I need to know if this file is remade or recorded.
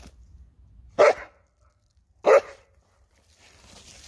recorded